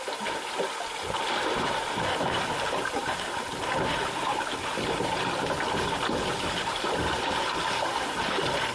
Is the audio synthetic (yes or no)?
no